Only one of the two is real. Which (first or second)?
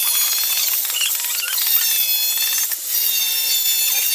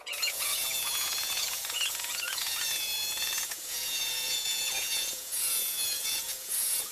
first